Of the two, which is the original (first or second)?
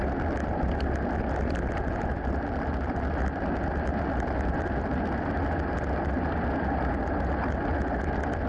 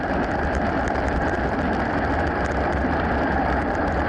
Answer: first